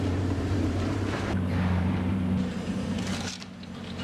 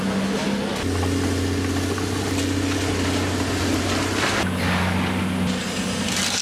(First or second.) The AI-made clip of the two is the first